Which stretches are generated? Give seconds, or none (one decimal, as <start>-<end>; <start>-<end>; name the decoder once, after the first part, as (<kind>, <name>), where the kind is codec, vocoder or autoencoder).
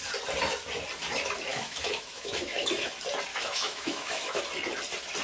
1.5-2.9 (autoencoder, DAC-VAE); 3.3-4.4